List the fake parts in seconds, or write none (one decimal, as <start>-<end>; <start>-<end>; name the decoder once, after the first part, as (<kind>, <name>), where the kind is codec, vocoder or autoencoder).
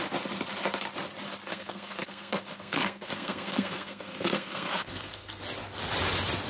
1.5-5.4 (codec, SNAC)